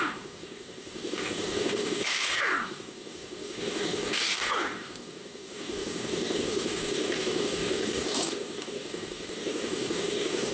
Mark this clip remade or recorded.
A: remade